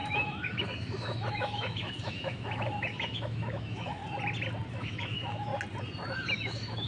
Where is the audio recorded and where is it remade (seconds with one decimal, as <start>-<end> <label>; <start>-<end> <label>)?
0.0-4.0 remade; 4.0-4.7 recorded; 4.7-5.5 remade; 5.5-6.3 recorded; 6.3-6.9 remade

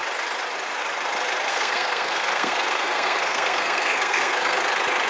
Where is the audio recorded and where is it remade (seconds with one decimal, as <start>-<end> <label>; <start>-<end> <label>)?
0.0-1.5 recorded; 1.5-4.6 remade; 4.6-5.1 recorded

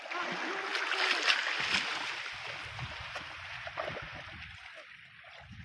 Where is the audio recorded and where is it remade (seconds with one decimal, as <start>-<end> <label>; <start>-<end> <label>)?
0.0-5.6 recorded

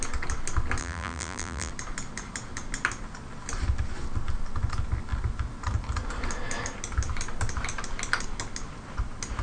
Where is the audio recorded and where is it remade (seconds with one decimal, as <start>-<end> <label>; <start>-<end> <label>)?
0.0-0.8 recorded; 0.8-1.7 remade; 1.7-9.4 recorded

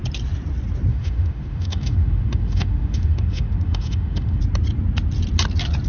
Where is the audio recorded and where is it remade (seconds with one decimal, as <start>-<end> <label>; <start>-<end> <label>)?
0.0-0.9 recorded; 0.9-4.4 remade; 4.4-5.9 recorded